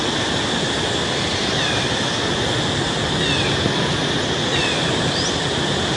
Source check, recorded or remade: recorded